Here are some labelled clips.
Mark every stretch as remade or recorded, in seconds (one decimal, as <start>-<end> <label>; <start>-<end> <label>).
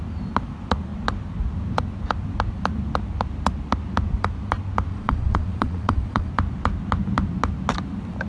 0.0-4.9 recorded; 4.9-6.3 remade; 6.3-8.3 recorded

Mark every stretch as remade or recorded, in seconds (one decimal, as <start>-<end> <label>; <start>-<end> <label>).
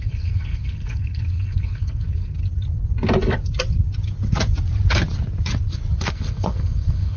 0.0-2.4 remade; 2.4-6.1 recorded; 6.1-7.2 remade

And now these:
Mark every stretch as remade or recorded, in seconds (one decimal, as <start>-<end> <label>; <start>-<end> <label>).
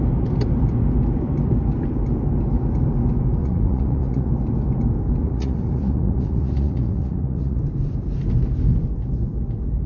0.0-3.4 recorded; 3.4-4.3 remade; 4.3-5.2 recorded; 5.2-7.6 remade; 7.6-9.9 recorded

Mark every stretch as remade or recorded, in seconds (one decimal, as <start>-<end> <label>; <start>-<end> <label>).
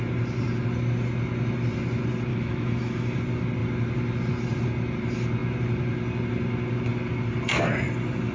0.0-2.3 recorded; 2.3-3.2 remade; 3.2-8.3 recorded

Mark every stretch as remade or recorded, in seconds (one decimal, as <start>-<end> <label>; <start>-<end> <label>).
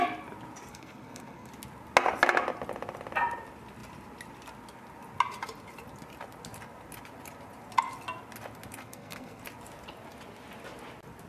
0.0-0.7 recorded; 0.7-1.5 remade; 1.5-8.8 recorded; 8.8-9.4 remade; 9.4-11.3 recorded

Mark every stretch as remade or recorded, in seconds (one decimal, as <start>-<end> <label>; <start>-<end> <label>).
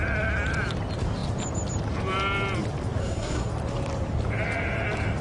0.0-3.0 recorded; 3.0-3.5 remade; 3.5-5.2 recorded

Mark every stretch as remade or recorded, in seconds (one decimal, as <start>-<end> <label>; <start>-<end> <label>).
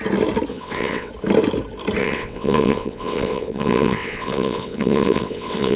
0.0-0.5 recorded; 0.5-1.1 remade; 1.1-2.0 recorded; 2.0-5.8 remade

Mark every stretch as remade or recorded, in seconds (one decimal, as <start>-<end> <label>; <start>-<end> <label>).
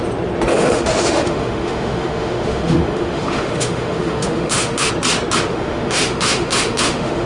0.0-0.5 recorded; 0.5-4.9 remade; 4.9-5.5 recorded; 5.5-7.3 remade